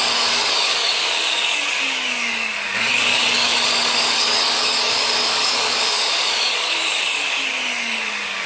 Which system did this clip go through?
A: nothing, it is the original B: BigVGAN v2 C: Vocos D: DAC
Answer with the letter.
D